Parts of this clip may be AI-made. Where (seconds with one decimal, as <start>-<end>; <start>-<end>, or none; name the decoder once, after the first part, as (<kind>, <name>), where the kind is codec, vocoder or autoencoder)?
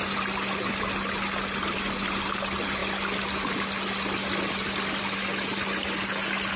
none